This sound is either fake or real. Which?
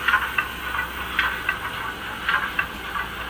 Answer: real